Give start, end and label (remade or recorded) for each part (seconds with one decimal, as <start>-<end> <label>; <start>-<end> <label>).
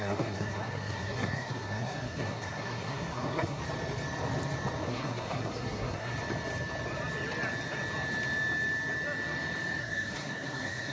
0.0-3.6 remade; 3.6-4.8 recorded; 4.8-6.1 remade; 6.1-9.8 recorded; 9.8-10.9 remade